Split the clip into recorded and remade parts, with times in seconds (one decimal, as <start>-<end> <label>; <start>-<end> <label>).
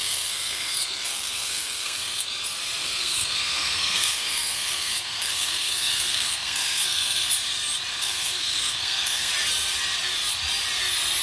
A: 0.0-2.3 remade; 2.3-2.8 recorded; 2.8-7.3 remade; 7.3-7.9 recorded; 7.9-9.3 remade; 9.3-11.2 recorded